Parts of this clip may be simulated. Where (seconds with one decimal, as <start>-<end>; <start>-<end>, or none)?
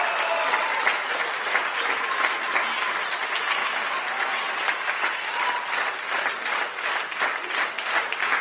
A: none